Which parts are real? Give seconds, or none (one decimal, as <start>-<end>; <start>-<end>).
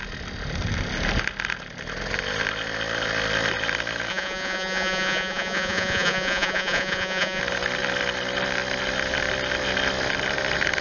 0.0-4.1; 7.4-10.8